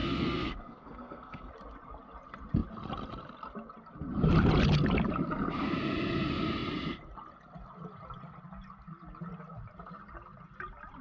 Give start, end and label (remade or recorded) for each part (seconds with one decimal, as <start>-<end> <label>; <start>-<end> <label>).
0.0-1.5 remade; 1.5-11.0 recorded